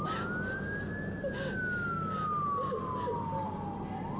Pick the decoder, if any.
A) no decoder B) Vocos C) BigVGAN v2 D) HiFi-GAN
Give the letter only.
A